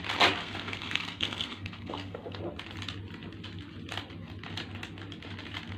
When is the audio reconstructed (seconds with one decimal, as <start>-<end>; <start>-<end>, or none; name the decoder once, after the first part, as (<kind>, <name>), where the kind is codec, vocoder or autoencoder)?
0.4-2.4 (codec, SNAC)